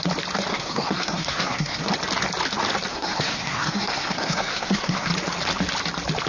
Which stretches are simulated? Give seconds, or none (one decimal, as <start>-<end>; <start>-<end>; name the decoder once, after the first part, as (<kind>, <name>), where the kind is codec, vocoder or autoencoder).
0.5-1.8 (codec, SNAC); 2.9-5.1